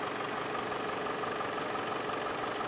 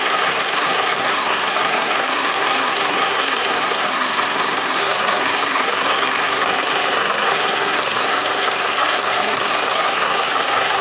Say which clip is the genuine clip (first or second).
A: first